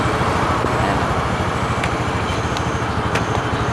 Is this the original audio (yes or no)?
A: yes